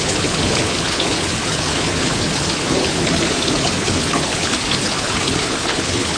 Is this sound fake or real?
fake